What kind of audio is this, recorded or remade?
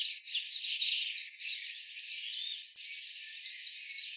recorded